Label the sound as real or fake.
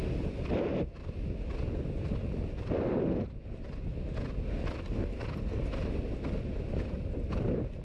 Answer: real